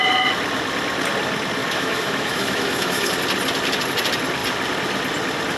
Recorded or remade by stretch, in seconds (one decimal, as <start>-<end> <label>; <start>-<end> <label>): 0.0-1.6 recorded; 1.6-3.1 remade; 3.1-5.6 recorded